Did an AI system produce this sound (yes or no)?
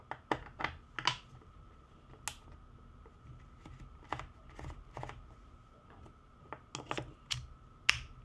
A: no